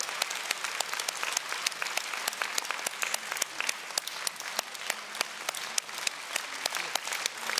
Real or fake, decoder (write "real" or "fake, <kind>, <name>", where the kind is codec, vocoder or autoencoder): real